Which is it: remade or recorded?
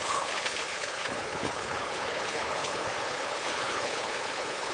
remade